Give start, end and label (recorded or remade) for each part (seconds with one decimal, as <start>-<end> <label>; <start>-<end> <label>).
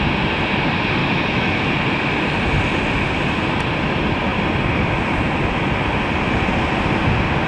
0.0-1.0 recorded; 1.0-1.7 remade; 1.7-7.5 recorded